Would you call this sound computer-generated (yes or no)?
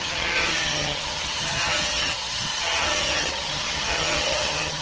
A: yes